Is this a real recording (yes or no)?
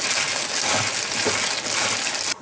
yes